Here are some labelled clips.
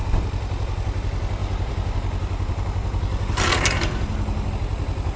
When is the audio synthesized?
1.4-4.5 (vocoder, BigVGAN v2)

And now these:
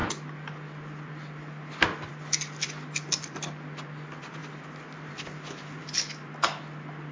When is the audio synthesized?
none

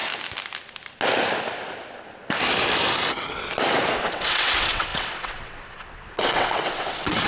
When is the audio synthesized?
4.1-7.3 (vocoder, WaveNeXt)

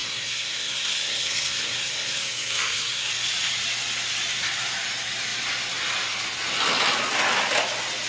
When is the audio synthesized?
0.0-3.1 (codec, SNAC)

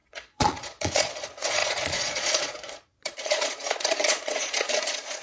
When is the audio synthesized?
0.0-5.2 (vocoder, Vocos)

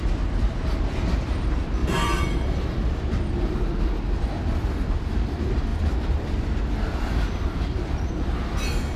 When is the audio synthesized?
1.8-2.9 (vocoder, BigVGAN v2); 5.7-8.1